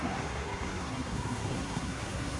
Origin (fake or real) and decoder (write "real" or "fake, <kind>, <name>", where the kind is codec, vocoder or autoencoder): fake, codec, SNAC